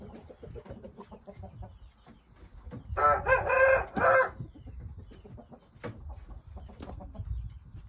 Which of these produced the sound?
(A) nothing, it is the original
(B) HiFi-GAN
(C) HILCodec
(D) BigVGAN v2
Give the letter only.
A